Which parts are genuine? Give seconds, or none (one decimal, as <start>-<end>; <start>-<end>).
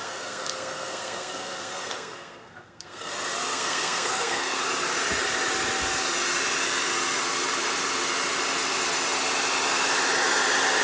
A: 3.1-3.5; 4.6-10.8